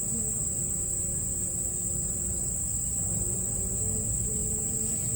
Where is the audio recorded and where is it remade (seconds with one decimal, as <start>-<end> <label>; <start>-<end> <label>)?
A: 0.0-3.1 remade; 3.1-4.2 recorded; 4.2-5.2 remade